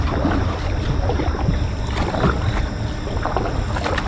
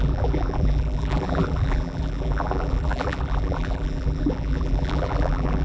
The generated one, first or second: second